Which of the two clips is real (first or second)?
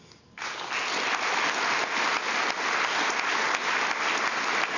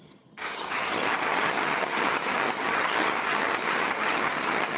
first